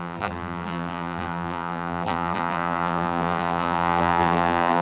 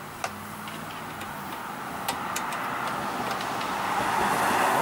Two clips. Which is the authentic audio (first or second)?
second